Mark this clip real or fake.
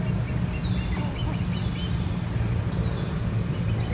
real